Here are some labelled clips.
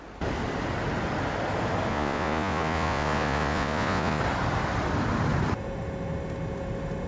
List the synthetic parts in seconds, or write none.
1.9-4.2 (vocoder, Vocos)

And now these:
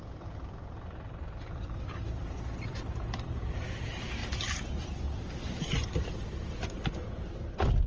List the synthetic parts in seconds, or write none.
0.0-2.2 (vocoder, BigVGAN v2); 3.8-4.2

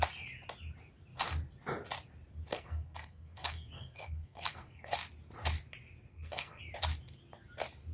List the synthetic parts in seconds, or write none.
2.5-4.9 (codec, SNAC); 6.1-6.6

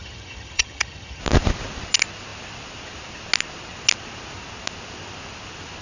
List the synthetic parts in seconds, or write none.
0.0-1.2 (vocoder, HiFi-GAN)

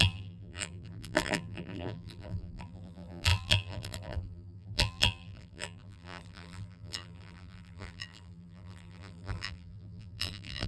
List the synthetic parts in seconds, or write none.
0.0-10.7 (vocoder, BigVGAN v2)